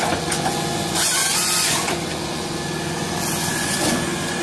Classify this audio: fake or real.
fake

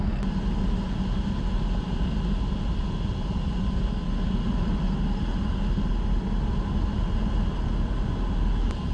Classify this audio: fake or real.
real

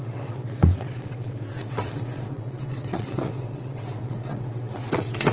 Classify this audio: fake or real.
fake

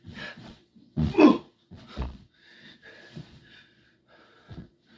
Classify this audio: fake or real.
fake